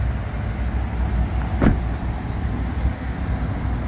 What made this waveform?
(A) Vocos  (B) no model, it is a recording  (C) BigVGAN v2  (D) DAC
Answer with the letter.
B